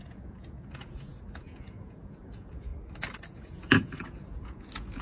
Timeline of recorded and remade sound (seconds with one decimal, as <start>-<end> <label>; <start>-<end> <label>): 0.0-2.7 remade; 2.7-3.3 recorded; 3.3-5.0 remade

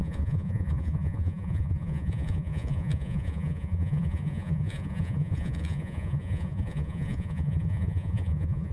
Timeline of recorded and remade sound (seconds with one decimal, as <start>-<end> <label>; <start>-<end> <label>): 0.0-8.7 remade